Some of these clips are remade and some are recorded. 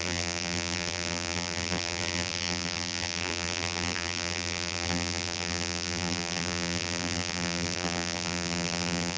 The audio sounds remade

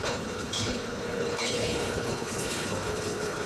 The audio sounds remade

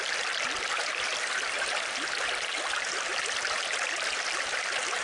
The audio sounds recorded